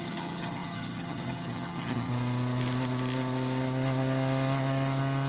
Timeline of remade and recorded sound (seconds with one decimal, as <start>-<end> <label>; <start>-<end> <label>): 0.0-2.1 remade; 2.1-5.3 recorded